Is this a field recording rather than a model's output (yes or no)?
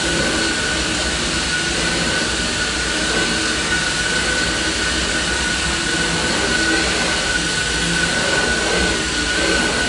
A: yes